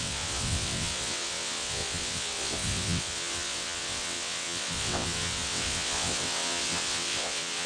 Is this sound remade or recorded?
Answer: remade